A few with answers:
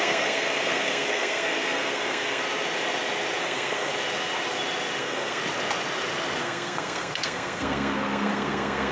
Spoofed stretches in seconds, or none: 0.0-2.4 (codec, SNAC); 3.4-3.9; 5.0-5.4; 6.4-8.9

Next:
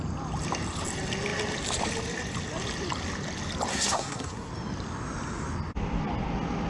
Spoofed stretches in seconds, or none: 3.7-4.5 (codec, SNAC)

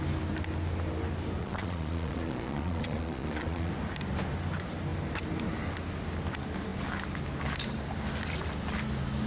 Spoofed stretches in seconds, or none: 1.4-3.7 (vocoder, Vocos)

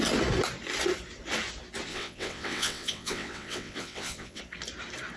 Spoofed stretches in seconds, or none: 1.9-4.4 (vocoder, WaveNeXt)

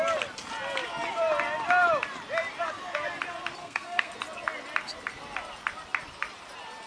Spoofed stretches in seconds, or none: 3.6-4.1 (codec, SNAC)

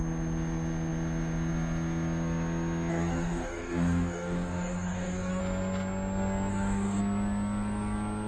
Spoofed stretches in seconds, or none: 2.9-5.4 (codec, DAC); 6.5-7.0

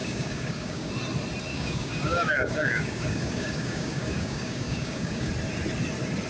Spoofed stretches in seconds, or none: 0.0-0.9 (codec, DAC); 1.5-5.3